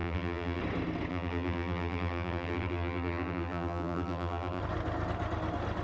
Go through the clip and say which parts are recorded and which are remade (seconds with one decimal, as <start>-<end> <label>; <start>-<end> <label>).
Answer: 0.0-0.6 remade; 0.6-1.1 recorded; 1.1-4.6 remade; 4.6-5.8 recorded

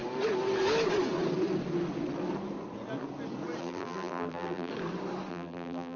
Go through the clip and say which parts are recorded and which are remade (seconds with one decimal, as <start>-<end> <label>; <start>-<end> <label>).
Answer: 0.0-3.6 recorded; 3.6-4.7 remade; 4.7-5.3 recorded; 5.3-6.0 remade